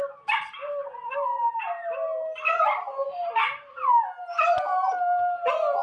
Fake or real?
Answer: real